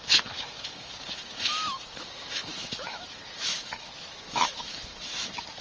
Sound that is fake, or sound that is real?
fake